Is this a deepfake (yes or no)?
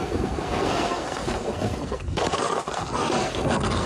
yes